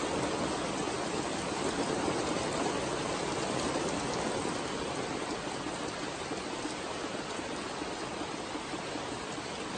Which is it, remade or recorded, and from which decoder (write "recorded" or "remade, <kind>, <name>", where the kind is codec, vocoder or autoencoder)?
recorded